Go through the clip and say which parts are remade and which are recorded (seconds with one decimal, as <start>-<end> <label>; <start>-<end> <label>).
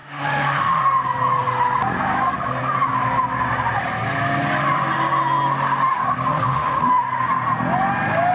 0.0-0.8 remade; 0.8-6.3 recorded; 6.3-7.0 remade; 7.0-8.3 recorded